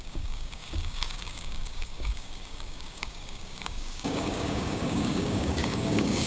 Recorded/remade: remade